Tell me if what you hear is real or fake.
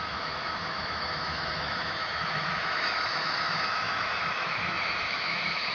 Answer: fake